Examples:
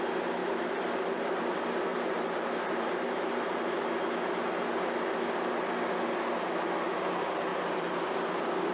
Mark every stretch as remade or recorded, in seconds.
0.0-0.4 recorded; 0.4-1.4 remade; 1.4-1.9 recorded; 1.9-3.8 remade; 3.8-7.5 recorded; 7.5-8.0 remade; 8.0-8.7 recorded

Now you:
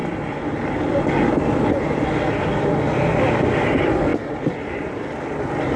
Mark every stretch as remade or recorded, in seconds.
0.0-4.1 recorded; 4.1-5.2 remade; 5.2-5.8 recorded

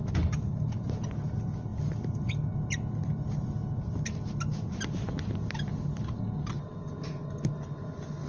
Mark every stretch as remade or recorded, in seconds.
0.0-1.1 remade; 1.1-8.3 recorded

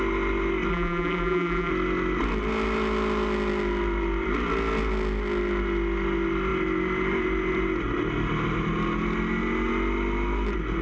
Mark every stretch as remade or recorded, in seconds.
0.0-0.7 recorded; 0.7-1.7 remade; 1.7-10.8 recorded

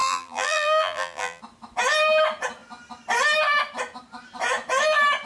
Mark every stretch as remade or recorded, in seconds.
0.0-1.4 remade; 1.4-5.3 recorded

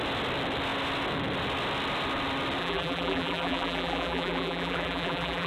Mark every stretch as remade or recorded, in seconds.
0.0-2.6 recorded; 2.6-5.5 remade

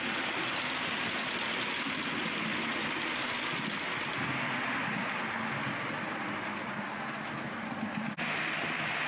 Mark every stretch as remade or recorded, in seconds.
0.0-9.1 recorded